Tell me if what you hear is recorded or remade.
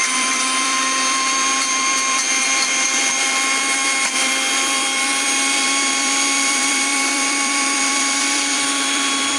remade